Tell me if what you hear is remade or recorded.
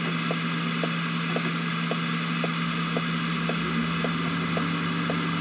recorded